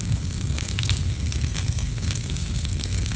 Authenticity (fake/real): fake